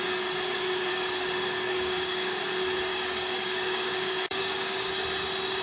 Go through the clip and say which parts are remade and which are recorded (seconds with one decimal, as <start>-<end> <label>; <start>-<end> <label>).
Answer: 0.0-0.9 recorded; 0.9-2.4 remade; 2.4-2.9 recorded; 2.9-4.9 remade; 4.9-5.6 recorded